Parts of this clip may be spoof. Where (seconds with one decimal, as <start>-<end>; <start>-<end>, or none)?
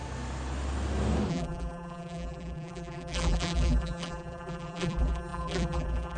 1.3-6.2